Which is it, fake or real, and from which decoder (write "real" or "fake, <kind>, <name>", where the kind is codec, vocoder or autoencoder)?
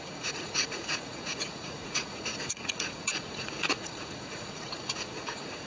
fake, vocoder, Vocos